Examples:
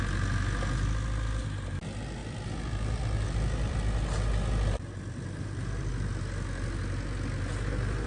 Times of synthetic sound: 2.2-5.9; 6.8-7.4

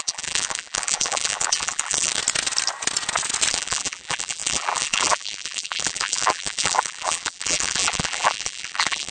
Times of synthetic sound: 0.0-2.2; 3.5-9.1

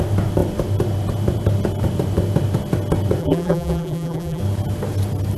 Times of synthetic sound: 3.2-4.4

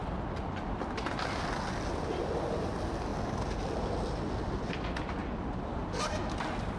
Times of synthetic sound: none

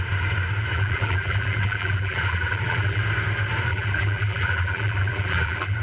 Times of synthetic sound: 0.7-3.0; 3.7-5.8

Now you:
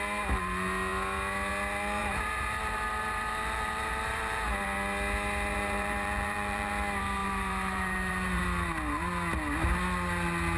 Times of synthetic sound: 2.0-4.4; 5.5-6.7; 7.2-8.4

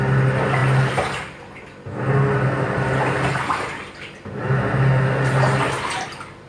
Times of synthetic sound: 0.6-4.5